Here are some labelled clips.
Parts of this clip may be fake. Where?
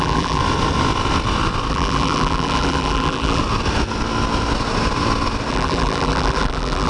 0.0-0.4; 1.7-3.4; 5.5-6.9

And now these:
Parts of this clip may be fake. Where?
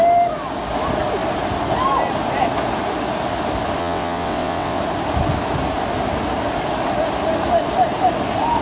3.8-4.8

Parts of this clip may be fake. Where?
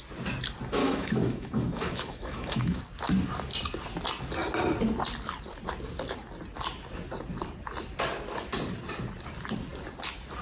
0.8-2.8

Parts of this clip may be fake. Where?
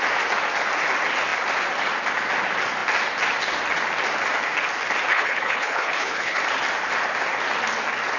5.1-6.4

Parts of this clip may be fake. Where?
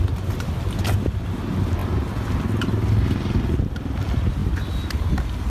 none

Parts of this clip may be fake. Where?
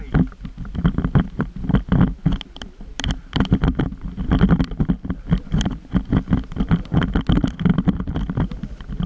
0.8-6.1; 7.7-8.2